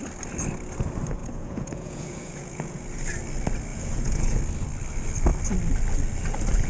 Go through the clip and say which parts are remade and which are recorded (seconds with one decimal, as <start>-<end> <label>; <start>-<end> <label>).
0.0-1.2 recorded; 1.2-3.0 remade; 3.0-3.7 recorded; 3.7-4.4 remade; 4.4-6.7 recorded